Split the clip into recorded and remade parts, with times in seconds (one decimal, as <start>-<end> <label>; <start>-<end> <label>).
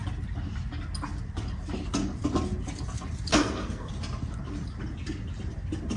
0.0-3.3 recorded; 3.3-3.9 remade; 3.9-6.0 recorded